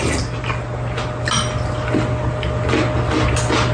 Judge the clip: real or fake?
real